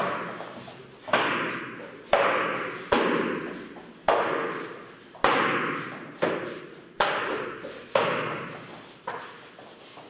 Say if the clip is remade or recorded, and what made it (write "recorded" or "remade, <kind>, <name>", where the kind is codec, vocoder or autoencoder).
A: recorded